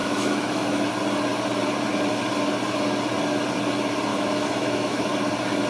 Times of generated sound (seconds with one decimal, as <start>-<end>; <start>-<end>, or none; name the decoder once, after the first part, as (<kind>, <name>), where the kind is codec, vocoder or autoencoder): 0.0-0.9 (autoencoder, DAC-VAE); 4.1-5.1